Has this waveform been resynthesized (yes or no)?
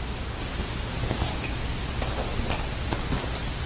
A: no